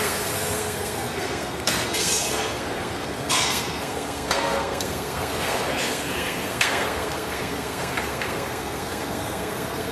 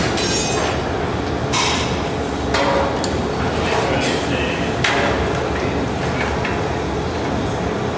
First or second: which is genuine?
second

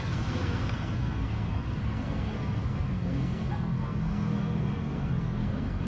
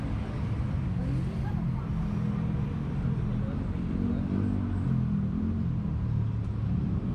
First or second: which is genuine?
second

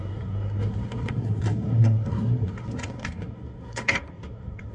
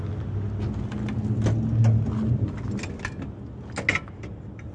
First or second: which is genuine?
second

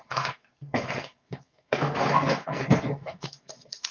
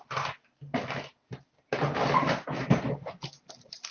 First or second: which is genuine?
second